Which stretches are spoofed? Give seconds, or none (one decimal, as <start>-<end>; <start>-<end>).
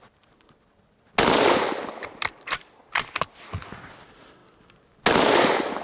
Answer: none